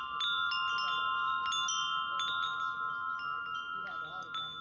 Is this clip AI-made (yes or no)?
no